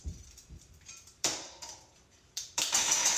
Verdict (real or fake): fake